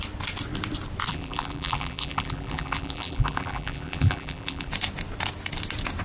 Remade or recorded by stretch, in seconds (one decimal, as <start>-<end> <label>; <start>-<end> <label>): 0.0-1.1 recorded; 1.1-4.7 remade; 4.7-6.0 recorded